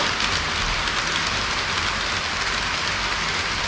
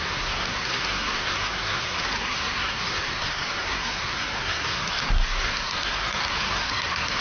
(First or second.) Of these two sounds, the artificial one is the second